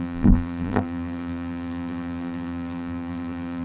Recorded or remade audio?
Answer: remade